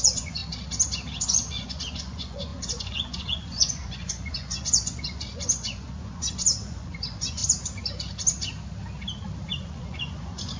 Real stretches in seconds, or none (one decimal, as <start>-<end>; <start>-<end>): 0.4-1.2; 7.4-9.5